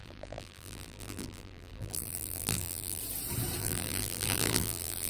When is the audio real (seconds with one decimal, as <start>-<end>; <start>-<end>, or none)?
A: 3.0-3.6